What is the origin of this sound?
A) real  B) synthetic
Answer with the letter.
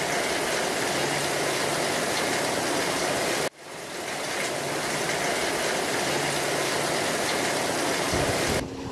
A